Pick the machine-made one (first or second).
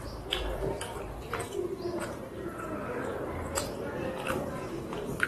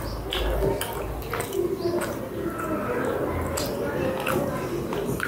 first